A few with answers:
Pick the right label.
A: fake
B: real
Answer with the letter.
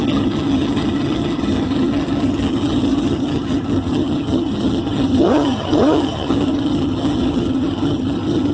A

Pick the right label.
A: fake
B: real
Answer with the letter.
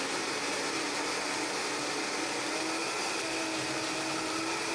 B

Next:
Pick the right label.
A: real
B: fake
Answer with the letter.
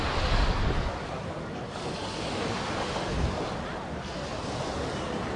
A